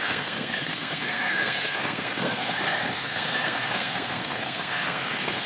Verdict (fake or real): fake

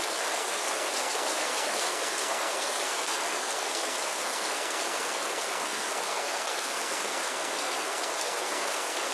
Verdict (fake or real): fake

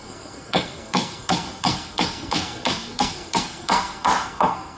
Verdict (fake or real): fake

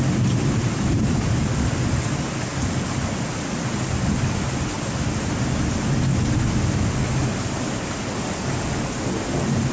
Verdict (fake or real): real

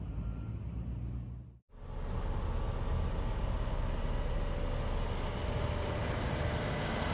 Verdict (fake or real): real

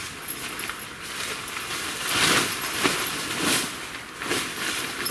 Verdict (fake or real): real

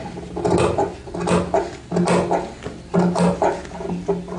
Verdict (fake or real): real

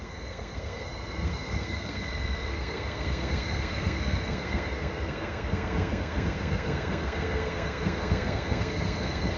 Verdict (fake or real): fake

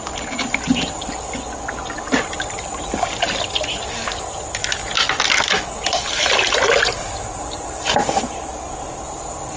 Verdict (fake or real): real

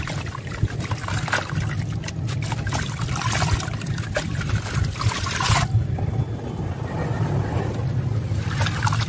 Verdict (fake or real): real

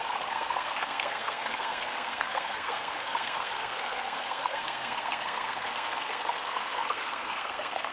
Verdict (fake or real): fake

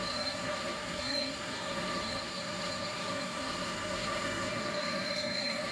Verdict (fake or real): fake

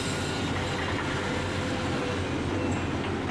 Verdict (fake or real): real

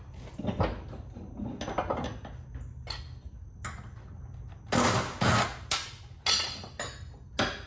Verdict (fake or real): real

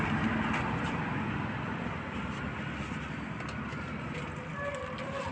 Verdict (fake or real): real